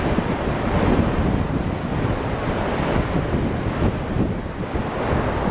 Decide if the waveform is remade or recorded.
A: recorded